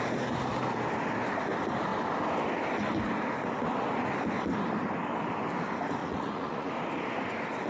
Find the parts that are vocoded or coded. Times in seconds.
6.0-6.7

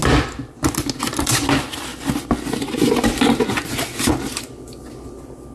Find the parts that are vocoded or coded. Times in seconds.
none

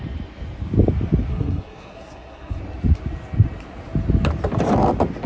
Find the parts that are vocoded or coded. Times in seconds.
1.3-2.6

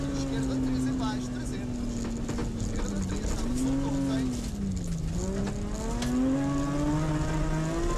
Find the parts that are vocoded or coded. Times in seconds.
none

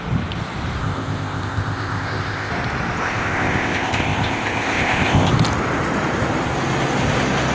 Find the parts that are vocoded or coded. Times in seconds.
0.8-2.5; 3.0-5.3

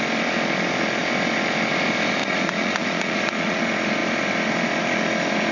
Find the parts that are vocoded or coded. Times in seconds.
2.2-3.6

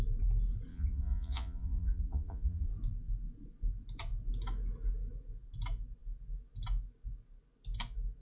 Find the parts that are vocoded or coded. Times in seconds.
0.7-2.7

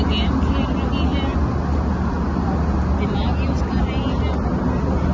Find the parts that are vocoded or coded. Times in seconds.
none